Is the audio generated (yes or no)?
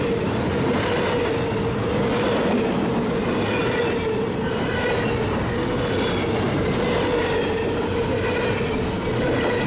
no